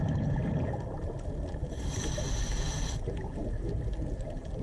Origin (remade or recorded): recorded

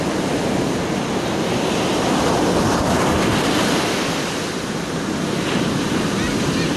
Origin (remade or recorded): recorded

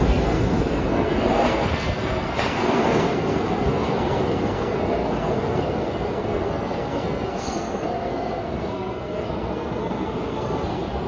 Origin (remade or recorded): remade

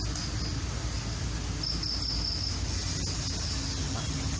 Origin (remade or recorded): recorded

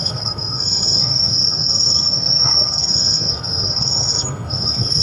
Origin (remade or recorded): remade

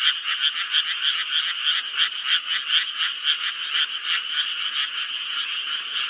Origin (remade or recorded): recorded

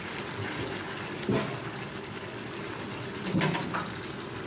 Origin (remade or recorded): recorded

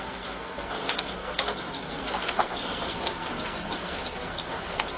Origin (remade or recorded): remade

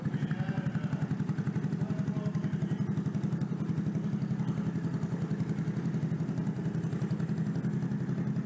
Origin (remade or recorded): recorded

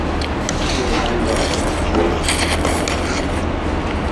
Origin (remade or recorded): recorded